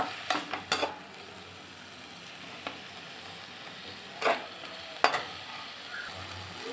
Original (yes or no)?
yes